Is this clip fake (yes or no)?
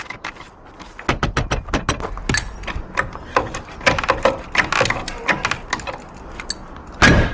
no